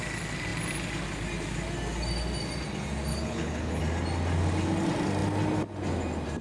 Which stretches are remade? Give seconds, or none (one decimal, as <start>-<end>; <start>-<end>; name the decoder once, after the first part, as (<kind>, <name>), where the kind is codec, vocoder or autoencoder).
3.1-3.8 (codec, HILCodec)